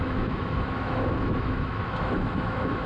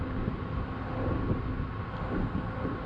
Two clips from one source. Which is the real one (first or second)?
second